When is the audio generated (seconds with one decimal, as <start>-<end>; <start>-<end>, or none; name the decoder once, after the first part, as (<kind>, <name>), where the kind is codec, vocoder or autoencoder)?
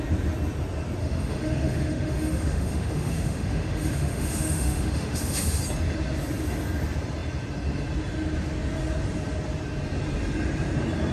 1.0-5.6 (autoencoder, DAC-VAE)